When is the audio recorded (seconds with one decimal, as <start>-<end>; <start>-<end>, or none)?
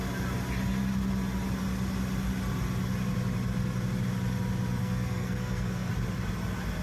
0.0-4.8; 5.9-6.8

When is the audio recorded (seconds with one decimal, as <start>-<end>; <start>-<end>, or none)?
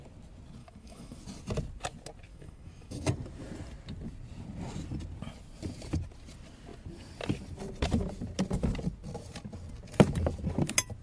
0.0-0.6; 1.2-2.3; 3.1-11.0